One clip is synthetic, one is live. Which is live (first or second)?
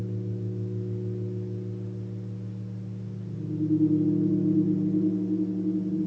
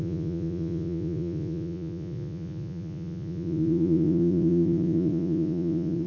first